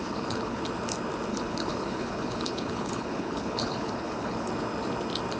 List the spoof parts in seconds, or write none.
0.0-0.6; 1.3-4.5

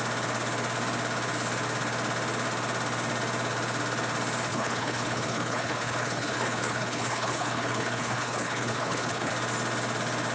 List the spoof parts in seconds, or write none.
4.5-9.3

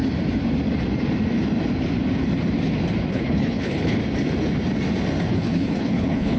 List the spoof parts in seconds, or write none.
3.1-4.0; 5.3-6.4